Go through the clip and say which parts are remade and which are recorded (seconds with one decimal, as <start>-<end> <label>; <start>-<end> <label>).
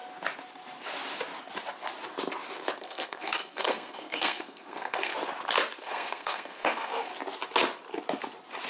0.0-2.8 recorded; 2.8-5.1 remade; 5.1-5.8 recorded; 5.8-7.1 remade; 7.1-8.7 recorded